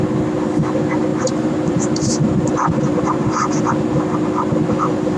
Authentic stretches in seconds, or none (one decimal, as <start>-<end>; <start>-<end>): 0.0-1.1; 3.6-5.2